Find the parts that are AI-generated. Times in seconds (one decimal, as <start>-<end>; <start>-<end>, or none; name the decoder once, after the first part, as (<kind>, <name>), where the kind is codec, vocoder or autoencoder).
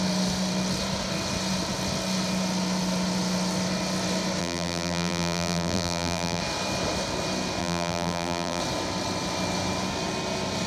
4.4-6.4 (vocoder, BigVGAN v2); 7.6-8.6